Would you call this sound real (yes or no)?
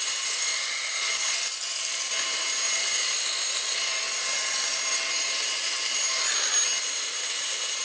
yes